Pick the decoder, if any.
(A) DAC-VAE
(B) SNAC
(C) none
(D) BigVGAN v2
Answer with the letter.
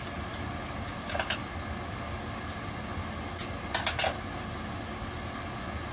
C